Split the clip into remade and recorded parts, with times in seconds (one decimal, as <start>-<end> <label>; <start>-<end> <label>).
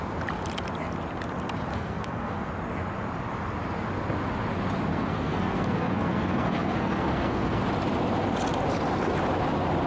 0.0-1.7 recorded; 1.7-2.5 remade; 2.5-4.9 recorded; 4.9-7.6 remade; 7.6-9.9 recorded